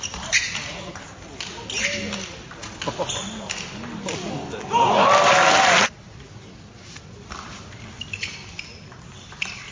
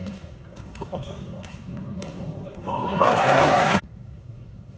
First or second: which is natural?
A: first